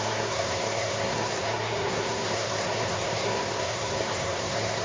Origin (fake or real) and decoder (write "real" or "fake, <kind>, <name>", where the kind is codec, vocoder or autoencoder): fake, codec, SNAC